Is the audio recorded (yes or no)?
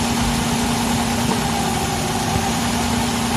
yes